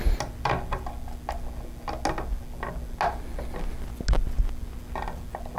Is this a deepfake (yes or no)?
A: no